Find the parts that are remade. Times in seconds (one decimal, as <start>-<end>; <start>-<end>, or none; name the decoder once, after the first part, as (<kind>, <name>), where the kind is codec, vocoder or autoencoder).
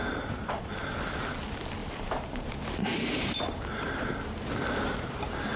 0.0-0.7 (vocoder, BigVGAN v2); 1.8-5.6